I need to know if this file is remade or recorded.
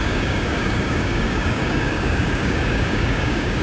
remade